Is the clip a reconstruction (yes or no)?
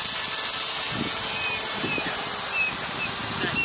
no